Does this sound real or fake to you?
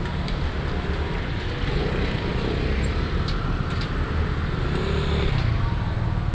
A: real